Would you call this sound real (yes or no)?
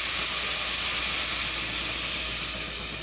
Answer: yes